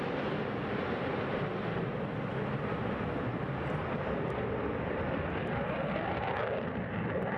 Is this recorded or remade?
recorded